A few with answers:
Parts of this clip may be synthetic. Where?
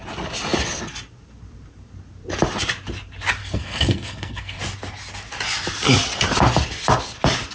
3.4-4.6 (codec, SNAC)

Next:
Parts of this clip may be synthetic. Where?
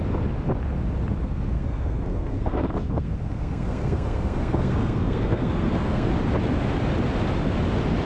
1.2-6.1 (codec, SNAC)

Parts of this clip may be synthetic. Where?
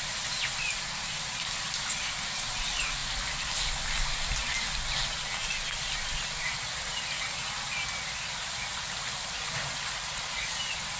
none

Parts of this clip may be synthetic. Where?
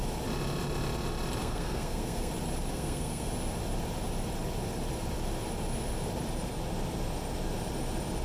1.4-2.3 (codec, SNAC); 2.7-3.3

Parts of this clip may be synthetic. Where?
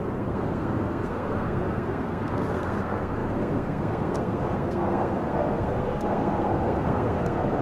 0.0-7.6 (codec, SNAC)